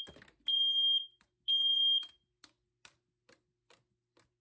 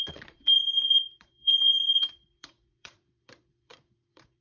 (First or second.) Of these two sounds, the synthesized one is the second